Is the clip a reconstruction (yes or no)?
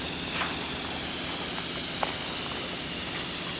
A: no